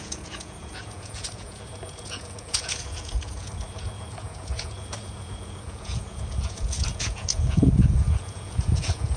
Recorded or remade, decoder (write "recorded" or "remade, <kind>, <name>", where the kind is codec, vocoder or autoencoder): remade, vocoder, Vocos